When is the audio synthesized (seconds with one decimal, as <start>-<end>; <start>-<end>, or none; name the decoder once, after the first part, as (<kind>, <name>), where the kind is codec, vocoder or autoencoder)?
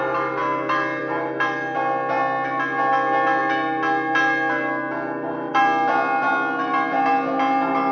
none